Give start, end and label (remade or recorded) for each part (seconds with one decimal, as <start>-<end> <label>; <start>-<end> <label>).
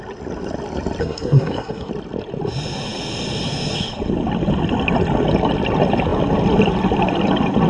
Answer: 0.0-1.0 recorded; 1.0-1.9 remade; 1.9-7.7 recorded